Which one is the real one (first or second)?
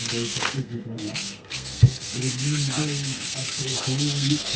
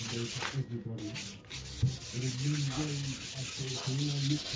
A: second